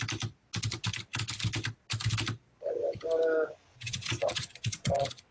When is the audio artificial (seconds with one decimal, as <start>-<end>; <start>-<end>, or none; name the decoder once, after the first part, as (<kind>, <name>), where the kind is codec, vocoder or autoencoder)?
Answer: 3.7-5.3 (vocoder, WaveNeXt)